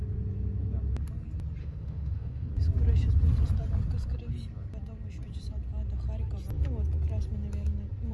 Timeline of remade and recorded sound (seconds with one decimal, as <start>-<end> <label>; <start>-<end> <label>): 0.0-1.6 recorded; 1.6-2.5 remade; 2.5-8.1 recorded